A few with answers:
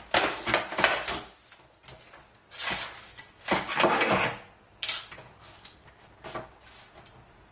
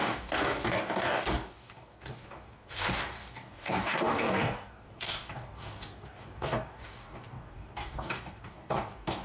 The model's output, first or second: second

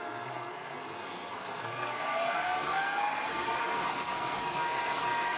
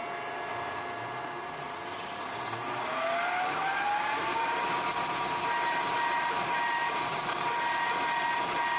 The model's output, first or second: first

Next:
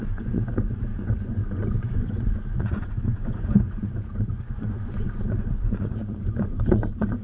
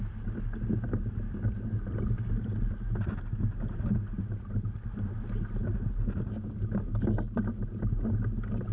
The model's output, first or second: first